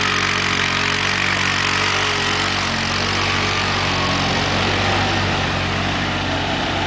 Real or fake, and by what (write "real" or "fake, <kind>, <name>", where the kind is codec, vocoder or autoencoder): real